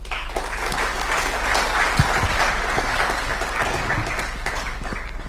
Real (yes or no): no